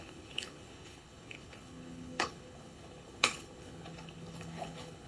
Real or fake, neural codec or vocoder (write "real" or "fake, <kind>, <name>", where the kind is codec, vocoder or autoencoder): fake, codec, HILCodec